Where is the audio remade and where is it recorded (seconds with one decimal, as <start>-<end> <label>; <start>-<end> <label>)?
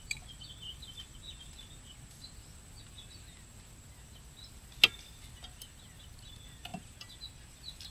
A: 0.0-7.9 recorded